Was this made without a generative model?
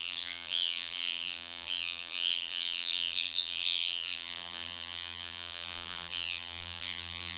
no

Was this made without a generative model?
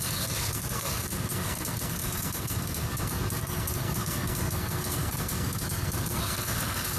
no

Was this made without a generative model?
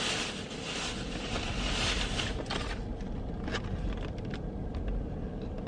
yes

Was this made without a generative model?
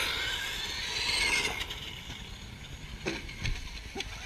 yes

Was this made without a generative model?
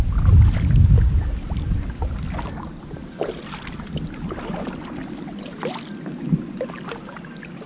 yes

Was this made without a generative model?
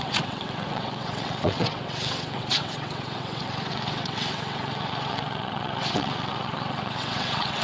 no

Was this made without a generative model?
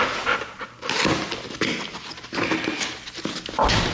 yes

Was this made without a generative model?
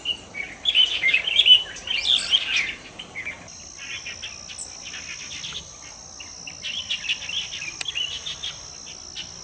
yes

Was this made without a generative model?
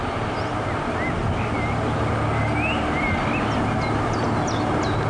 yes